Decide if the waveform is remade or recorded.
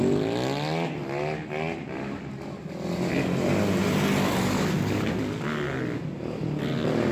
recorded